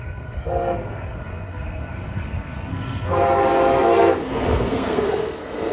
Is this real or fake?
fake